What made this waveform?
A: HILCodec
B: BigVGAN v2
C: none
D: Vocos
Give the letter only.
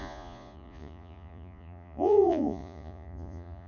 D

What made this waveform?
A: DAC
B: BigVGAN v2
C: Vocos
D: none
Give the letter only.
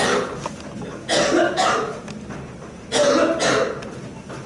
D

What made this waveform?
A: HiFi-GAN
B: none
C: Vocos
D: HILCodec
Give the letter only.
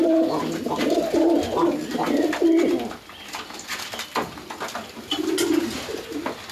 B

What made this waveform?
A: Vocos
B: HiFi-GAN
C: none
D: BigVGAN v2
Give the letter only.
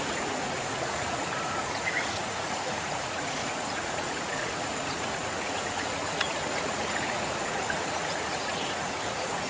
A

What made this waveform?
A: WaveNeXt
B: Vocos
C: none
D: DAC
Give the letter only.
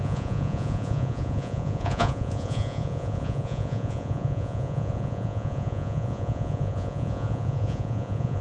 B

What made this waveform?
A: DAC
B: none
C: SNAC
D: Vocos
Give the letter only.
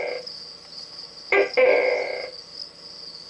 B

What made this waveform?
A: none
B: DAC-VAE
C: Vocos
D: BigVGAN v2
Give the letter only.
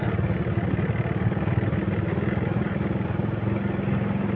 A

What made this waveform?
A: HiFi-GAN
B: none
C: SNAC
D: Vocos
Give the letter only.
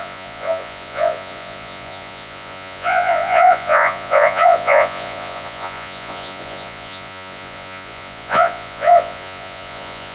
D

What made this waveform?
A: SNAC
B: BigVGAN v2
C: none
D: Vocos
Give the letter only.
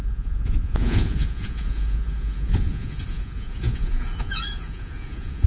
D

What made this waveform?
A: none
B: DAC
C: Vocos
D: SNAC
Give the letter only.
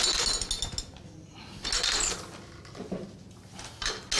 A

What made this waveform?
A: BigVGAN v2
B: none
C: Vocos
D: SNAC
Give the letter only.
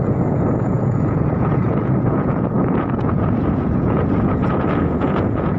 C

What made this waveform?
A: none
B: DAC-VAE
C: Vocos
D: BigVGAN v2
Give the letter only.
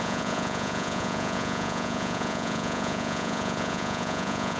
C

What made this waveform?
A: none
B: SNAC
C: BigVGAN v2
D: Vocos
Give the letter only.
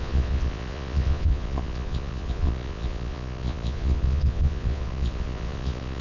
D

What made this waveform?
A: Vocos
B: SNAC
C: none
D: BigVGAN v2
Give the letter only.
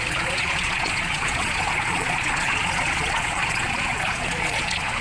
A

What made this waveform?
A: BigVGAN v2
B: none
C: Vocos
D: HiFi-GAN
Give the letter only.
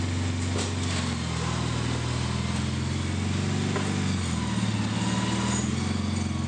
B